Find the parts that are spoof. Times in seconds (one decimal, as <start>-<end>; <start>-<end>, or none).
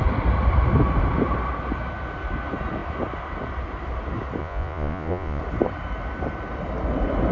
4.4-5.4